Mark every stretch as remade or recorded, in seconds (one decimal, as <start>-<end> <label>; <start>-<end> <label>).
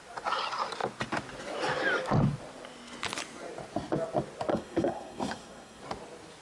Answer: 0.0-4.5 recorded; 4.5-5.8 remade; 5.8-6.4 recorded